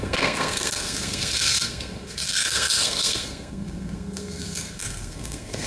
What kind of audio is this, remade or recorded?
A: remade